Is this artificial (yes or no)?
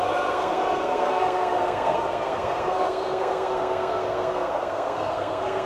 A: yes